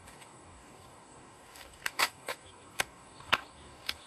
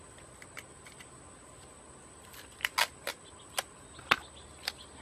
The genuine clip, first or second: second